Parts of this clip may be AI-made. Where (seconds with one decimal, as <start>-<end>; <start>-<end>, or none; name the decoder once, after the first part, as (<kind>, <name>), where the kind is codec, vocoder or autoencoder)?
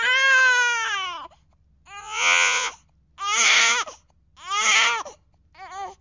2.0-2.7 (vocoder, Vocos)